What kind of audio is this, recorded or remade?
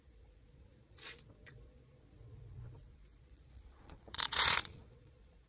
remade